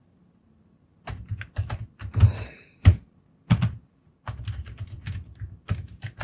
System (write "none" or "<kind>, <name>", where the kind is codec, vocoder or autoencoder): none